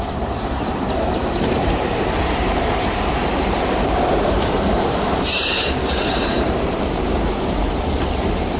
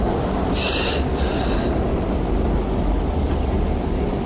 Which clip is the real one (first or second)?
second